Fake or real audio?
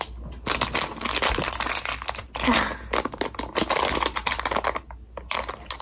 real